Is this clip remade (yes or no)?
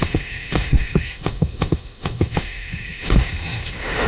yes